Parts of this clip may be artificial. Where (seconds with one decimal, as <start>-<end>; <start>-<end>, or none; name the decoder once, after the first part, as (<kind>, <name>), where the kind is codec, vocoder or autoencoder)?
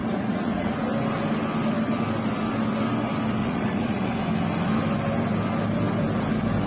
0.0-0.7 (vocoder, Vocos); 3.4-4.2